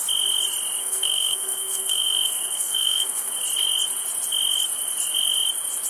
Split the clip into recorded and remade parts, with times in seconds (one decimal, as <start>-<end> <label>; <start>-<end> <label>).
0.0-0.8 recorded; 0.8-3.3 remade; 3.3-5.9 recorded